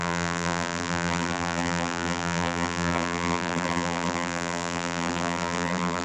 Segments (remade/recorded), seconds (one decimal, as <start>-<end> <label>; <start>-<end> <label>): 0.0-6.0 remade